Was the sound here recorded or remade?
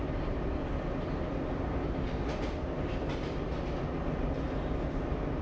recorded